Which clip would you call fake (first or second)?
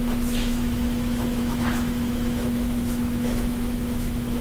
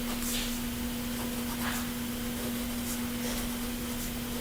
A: first